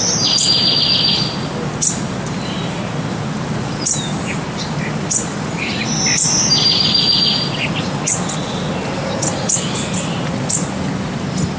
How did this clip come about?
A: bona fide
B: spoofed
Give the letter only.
A